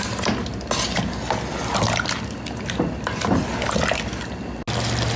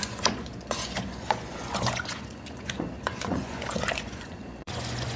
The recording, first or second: first